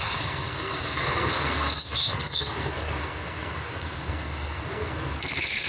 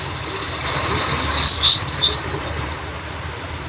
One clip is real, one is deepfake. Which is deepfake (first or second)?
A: first